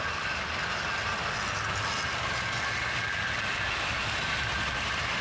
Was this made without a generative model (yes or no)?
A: yes